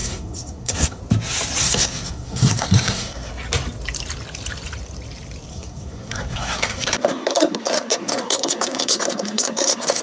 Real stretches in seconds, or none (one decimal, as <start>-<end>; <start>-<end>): 1.0-1.6; 3.3-5.5